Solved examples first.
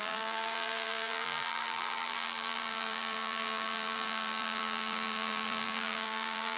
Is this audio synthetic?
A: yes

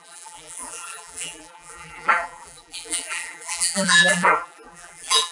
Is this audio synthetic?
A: yes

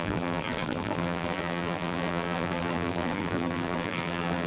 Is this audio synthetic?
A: yes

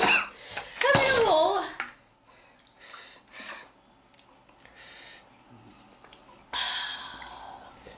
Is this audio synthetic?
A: no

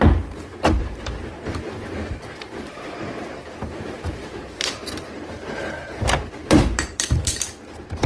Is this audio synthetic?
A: yes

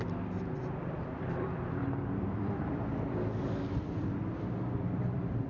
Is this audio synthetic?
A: yes